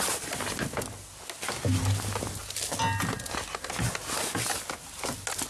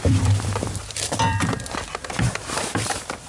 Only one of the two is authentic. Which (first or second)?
first